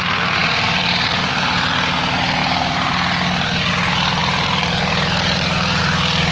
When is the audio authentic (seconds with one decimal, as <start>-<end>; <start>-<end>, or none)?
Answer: 0.0-0.4; 1.3-4.2; 5.8-6.3